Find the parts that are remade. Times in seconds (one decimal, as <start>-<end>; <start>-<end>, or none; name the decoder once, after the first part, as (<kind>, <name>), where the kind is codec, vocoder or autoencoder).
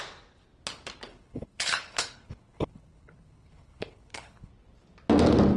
1.1-4.5 (codec, HILCodec)